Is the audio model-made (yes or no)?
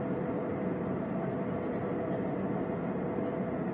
no